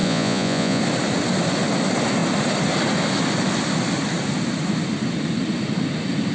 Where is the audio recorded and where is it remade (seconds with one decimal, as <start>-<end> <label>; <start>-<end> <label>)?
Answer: 0.0-0.8 remade; 0.8-6.3 recorded